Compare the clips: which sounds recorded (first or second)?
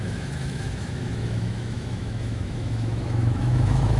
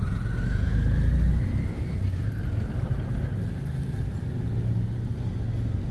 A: second